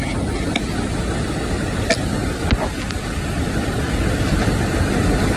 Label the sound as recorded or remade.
recorded